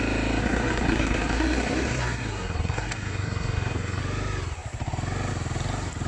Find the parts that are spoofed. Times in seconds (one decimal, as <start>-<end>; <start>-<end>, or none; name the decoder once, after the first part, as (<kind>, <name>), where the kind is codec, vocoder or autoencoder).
0.4-4.0 (codec, SNAC)